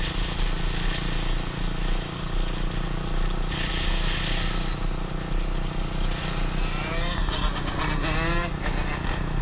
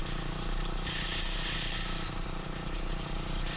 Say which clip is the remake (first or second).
second